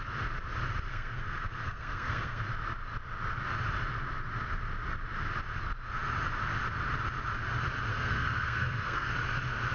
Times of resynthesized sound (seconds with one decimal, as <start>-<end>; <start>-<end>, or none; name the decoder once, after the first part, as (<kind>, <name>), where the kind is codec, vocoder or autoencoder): 0.9-2.4 (codec, SNAC); 7.9-9.1